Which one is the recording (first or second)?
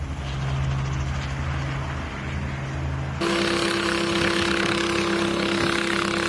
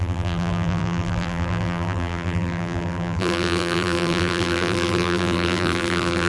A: first